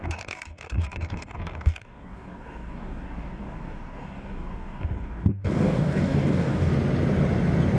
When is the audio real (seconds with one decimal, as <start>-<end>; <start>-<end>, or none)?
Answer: 6.7-7.8